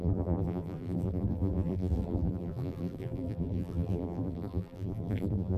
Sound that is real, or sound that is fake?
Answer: fake